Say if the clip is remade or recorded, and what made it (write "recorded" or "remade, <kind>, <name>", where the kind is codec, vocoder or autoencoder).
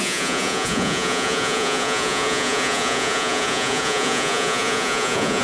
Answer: remade, vocoder, Vocos